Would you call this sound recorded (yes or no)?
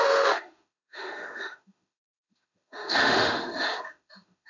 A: no